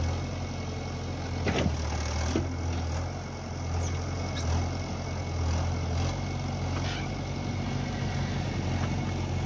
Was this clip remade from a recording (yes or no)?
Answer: no